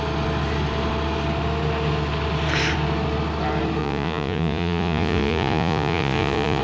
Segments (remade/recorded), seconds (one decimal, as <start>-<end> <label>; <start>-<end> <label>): 0.0-3.8 recorded; 3.8-6.6 remade

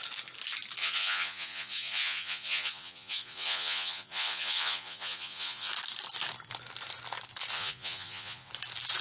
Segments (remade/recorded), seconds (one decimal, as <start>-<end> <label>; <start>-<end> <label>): 0.0-0.8 recorded; 0.8-5.7 remade; 5.7-7.5 recorded; 7.5-8.5 remade; 8.5-9.0 recorded